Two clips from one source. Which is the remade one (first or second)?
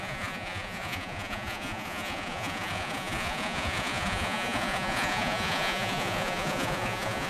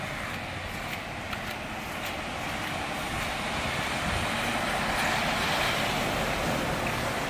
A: first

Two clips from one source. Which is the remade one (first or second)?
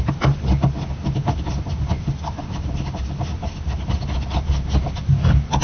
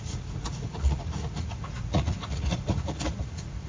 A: second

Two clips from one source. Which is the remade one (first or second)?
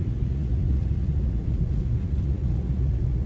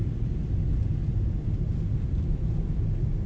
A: first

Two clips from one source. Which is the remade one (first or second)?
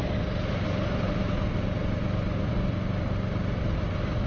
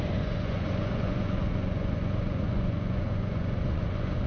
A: second